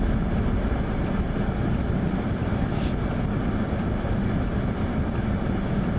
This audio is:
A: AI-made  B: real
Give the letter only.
B